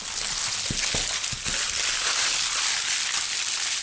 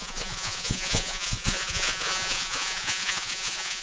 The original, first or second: first